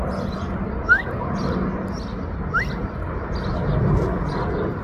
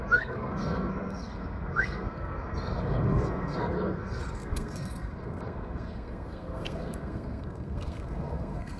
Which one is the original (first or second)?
first